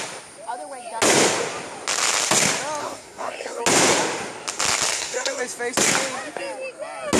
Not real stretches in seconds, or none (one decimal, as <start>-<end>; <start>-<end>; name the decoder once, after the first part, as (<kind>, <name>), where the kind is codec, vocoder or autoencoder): 2.8-3.6 (codec, SNAC); 4.9-5.4